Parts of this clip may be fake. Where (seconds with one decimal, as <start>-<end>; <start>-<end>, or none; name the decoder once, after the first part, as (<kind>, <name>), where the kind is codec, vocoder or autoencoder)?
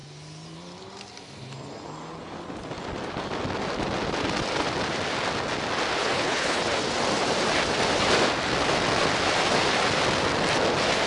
6.0-6.6 (codec, HILCodec)